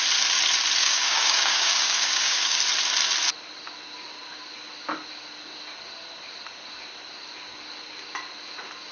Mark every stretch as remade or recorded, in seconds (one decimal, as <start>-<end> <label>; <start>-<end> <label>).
0.0-0.8 recorded; 0.8-2.6 remade; 2.6-8.9 recorded